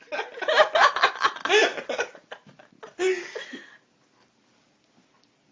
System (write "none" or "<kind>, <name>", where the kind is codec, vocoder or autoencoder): none